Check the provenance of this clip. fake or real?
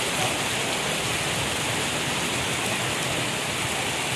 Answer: real